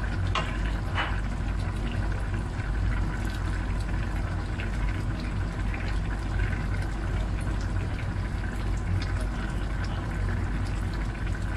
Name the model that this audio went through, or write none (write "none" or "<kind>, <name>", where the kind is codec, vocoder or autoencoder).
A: none